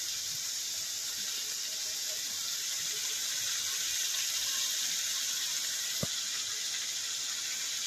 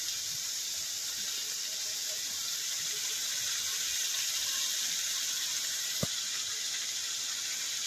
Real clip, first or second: first